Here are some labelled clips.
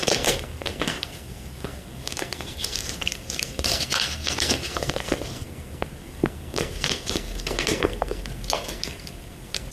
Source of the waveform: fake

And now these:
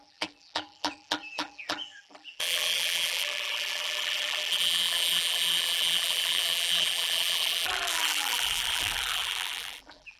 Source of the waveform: fake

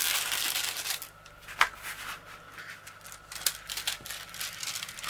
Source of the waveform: real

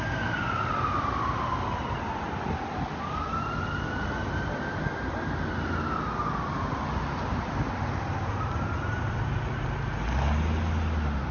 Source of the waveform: real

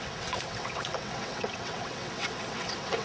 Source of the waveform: fake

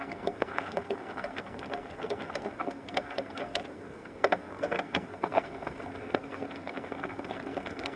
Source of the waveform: fake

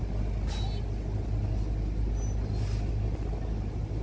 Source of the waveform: real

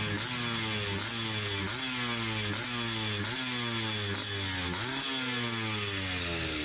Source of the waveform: real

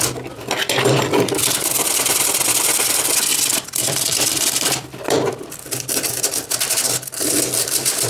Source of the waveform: fake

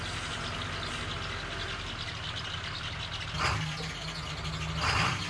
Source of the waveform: real